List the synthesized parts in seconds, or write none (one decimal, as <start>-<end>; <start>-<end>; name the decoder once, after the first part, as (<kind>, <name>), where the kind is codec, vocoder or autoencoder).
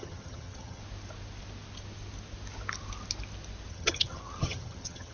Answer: 0.0-0.8 (vocoder, HiFi-GAN); 3.7-5.1